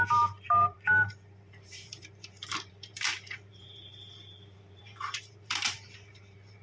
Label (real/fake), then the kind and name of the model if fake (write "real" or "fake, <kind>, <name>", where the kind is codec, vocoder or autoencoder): fake, vocoder, BigVGAN v2